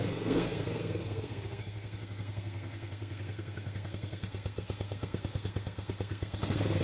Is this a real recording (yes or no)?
no